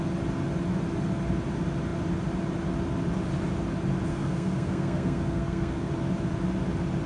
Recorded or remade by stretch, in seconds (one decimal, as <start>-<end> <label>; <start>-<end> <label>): 0.0-4.1 recorded; 4.1-5.9 remade; 5.9-7.1 recorded